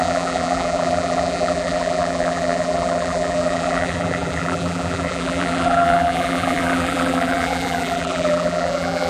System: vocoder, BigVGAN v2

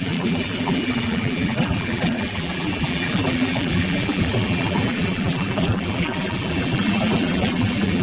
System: vocoder, BigVGAN v2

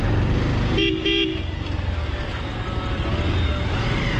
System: none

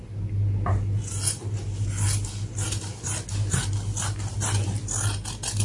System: none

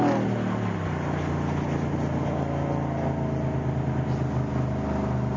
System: none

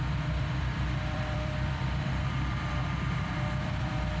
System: vocoder, BigVGAN v2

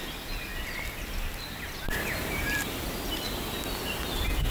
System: none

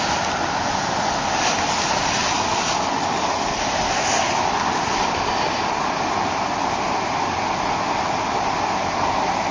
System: none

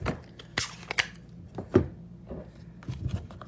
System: none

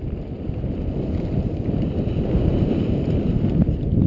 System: vocoder, BigVGAN v2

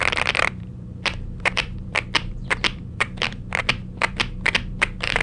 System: vocoder, BigVGAN v2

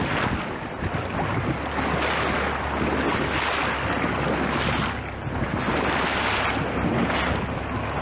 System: none